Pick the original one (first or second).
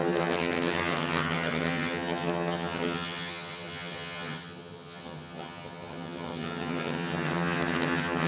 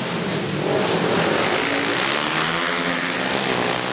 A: second